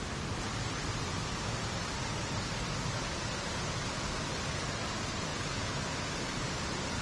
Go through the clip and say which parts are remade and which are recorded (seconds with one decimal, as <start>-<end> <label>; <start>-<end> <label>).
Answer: 0.0-5.3 recorded; 5.3-5.8 remade; 5.8-7.0 recorded

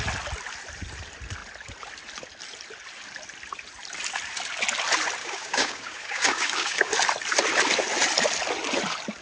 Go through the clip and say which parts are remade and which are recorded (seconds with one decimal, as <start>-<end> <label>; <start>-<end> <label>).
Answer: 0.0-5.2 recorded; 5.2-6.9 remade; 6.9-9.2 recorded

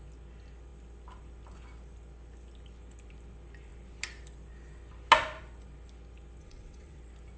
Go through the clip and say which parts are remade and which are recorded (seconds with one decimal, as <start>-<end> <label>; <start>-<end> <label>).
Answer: 0.0-6.4 recorded; 6.4-7.0 remade; 7.0-7.4 recorded